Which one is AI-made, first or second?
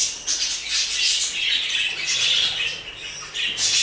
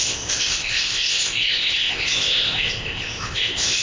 second